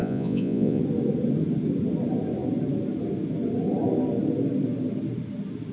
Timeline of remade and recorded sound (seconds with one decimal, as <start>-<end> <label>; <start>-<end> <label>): 0.0-0.8 remade; 0.8-5.7 recorded